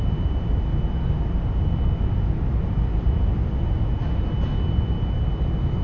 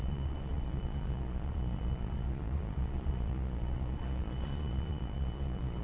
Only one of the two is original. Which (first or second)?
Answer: first